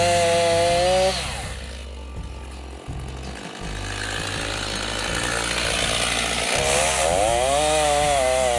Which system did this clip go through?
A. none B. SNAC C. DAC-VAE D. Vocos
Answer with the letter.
A